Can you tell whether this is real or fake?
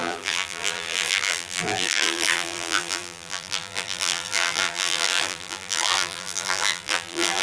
fake